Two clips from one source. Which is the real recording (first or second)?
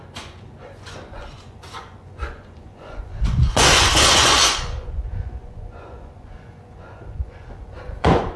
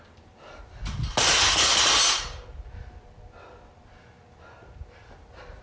second